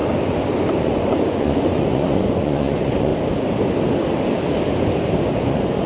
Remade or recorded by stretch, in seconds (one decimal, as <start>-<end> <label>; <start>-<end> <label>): 0.0-0.8 recorded; 0.8-3.1 remade; 3.1-5.4 recorded; 5.4-5.9 remade

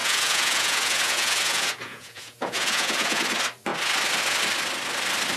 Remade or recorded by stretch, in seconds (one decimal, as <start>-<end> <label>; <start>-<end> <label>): 0.0-3.2 remade; 3.2-5.4 recorded